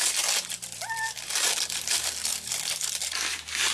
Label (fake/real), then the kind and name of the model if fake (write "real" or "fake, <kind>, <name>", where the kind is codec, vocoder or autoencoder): real